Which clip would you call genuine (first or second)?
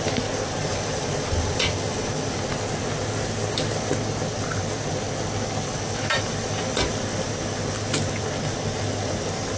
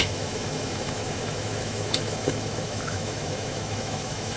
first